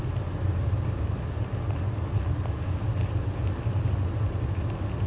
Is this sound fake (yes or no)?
no